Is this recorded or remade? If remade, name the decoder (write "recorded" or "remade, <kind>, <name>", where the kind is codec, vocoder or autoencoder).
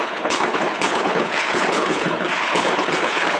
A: remade, codec, HILCodec